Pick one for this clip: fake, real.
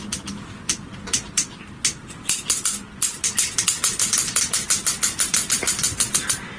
real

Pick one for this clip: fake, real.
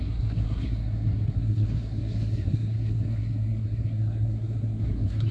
fake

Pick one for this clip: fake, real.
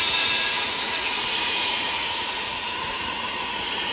fake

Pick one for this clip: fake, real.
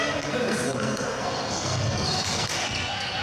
fake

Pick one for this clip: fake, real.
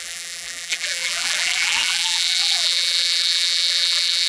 fake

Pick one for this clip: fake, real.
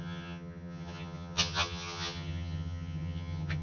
fake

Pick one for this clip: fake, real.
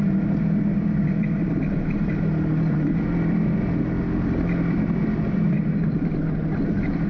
real